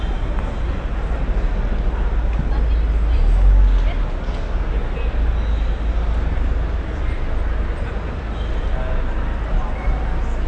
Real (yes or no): yes